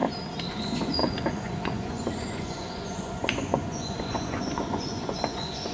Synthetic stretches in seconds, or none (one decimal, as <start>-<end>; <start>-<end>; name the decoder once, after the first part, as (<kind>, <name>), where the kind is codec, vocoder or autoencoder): 0.5-5.7 (vocoder, Vocos)